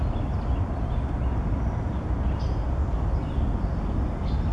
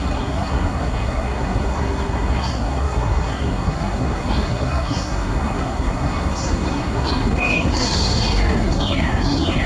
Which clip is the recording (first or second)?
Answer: first